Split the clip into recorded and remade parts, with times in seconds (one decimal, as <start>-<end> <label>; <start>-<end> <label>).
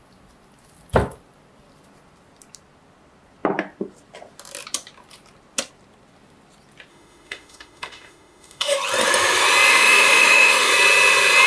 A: 0.0-6.9 recorded; 6.9-8.8 remade; 8.8-9.7 recorded; 9.7-10.7 remade; 10.7-11.5 recorded